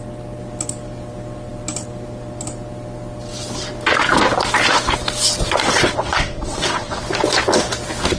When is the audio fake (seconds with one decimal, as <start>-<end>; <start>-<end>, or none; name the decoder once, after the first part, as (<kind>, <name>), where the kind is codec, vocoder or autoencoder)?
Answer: 5.6-7.0 (vocoder, WaveNeXt)